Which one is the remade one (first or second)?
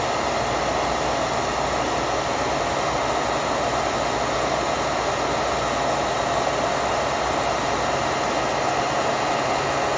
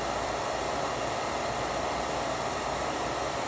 second